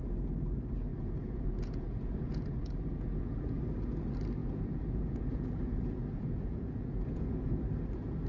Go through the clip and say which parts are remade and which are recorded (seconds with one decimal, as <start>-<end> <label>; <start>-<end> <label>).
0.0-0.9 recorded; 0.9-3.6 remade; 3.6-4.4 recorded; 4.4-7.6 remade; 7.6-8.3 recorded